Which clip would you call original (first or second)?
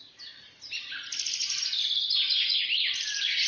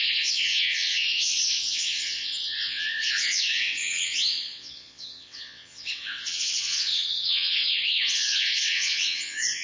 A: first